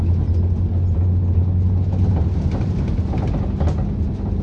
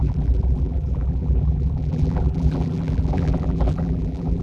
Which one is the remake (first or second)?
second